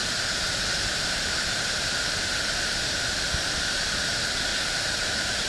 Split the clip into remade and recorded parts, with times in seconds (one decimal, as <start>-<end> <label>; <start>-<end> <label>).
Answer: 0.0-3.3 remade; 3.3-4.5 recorded; 4.5-5.5 remade